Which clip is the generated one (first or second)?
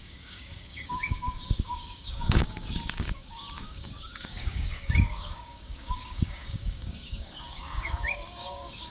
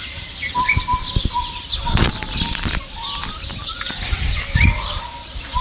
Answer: first